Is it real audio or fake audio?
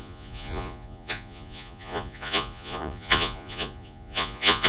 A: fake